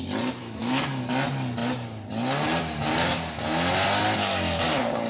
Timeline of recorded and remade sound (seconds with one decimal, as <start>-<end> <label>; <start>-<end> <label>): 0.0-0.4 recorded; 0.4-1.0 remade; 1.0-5.1 recorded